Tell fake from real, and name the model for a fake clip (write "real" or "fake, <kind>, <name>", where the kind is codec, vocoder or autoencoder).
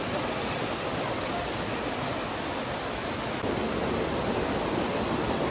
real